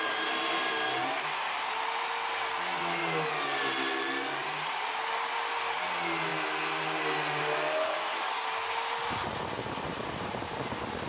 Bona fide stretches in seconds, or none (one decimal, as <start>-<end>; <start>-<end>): 0.0-11.1